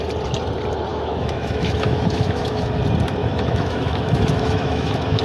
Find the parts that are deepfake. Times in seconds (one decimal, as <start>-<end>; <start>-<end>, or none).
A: 0.9-2.8; 3.2-5.2